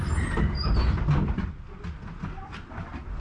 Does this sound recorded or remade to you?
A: recorded